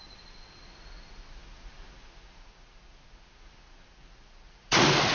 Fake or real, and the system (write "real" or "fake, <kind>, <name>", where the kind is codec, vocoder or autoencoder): fake, vocoder, Vocos